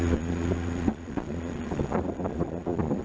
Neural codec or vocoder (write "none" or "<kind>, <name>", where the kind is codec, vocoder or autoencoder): vocoder, Vocos